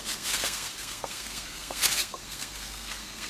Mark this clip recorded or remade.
remade